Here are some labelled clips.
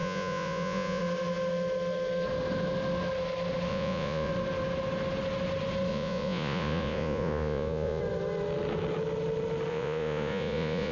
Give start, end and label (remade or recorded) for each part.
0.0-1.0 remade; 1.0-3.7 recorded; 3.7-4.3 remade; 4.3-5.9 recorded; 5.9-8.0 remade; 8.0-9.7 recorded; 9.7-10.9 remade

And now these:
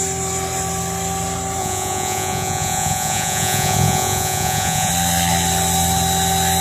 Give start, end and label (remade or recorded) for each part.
0.0-1.6 recorded; 1.6-4.9 remade; 4.9-6.6 recorded

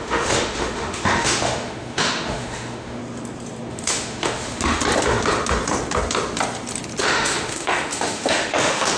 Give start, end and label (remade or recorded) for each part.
0.0-3.0 remade; 3.0-3.7 recorded; 3.7-4.8 remade; 4.8-7.0 recorded; 7.0-9.0 remade

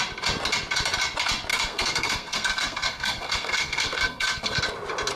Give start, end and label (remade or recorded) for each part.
0.0-1.5 recorded; 1.5-4.6 remade; 4.6-5.2 recorded

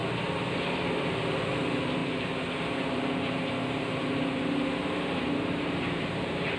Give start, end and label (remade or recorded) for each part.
0.0-1.2 recorded; 1.2-6.6 remade

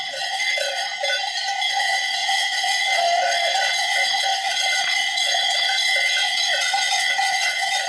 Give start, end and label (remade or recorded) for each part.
0.0-0.9 remade; 0.9-1.7 recorded; 1.7-7.9 remade

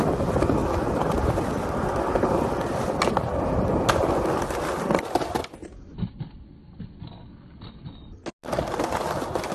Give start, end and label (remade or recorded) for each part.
0.0-9.5 recorded